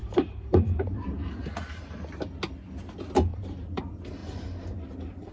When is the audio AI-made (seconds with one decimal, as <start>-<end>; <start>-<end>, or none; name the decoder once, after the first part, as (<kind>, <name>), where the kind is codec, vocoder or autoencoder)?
0.0-1.8 (vocoder, BigVGAN v2); 3.3-3.8; 4.2-5.3